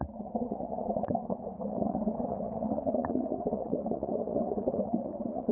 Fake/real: fake